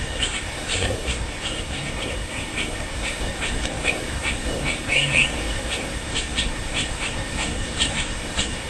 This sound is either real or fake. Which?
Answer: fake